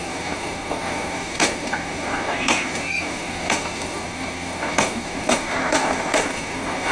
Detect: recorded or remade remade